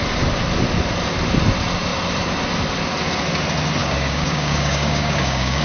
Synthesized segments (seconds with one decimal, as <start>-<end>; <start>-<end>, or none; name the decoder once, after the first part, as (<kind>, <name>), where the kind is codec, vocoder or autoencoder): 3.8-5.6 (codec, DAC)